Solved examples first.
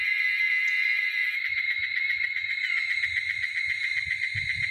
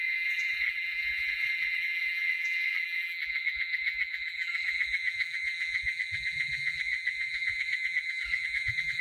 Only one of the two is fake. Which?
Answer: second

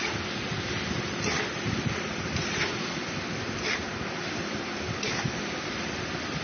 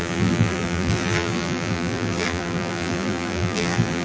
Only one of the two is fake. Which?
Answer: second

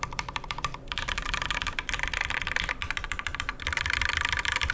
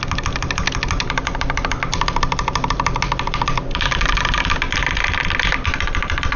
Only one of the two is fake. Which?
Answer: first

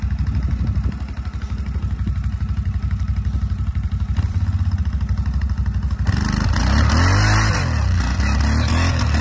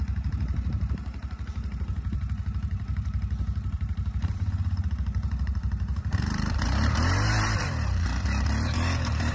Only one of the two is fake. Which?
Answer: second